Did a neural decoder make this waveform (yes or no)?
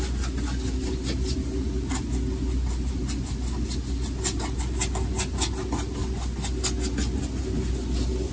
no